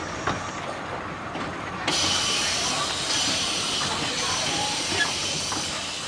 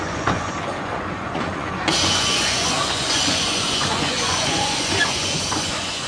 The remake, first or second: second